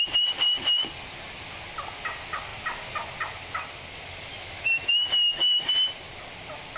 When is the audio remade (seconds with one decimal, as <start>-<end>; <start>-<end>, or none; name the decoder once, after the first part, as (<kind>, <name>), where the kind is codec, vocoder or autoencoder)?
4.3-5.6 (autoencoder, DAC-VAE)